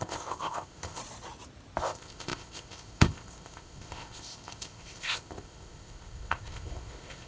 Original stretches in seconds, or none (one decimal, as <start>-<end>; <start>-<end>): 1.0-1.8

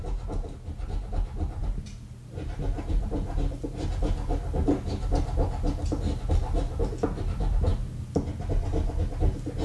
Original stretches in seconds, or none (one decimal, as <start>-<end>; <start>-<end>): 0.0-9.6

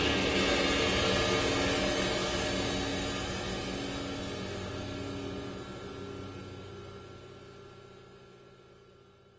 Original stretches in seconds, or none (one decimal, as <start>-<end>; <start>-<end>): 0.0-9.4